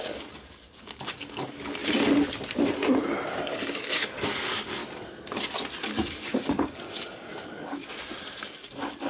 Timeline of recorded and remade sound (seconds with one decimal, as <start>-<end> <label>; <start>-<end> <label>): 0.0-1.8 remade; 1.8-3.3 recorded; 3.3-4.8 remade; 4.8-5.9 recorded; 5.9-7.8 remade; 7.8-8.4 recorded; 8.4-9.1 remade